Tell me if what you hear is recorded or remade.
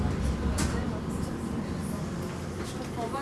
recorded